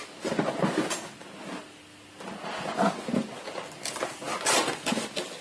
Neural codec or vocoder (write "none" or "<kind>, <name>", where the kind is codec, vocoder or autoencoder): none